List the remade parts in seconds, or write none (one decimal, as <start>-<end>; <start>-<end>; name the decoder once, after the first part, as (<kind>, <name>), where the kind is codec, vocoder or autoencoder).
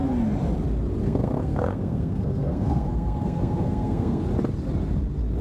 1.0-4.2 (codec, SNAC)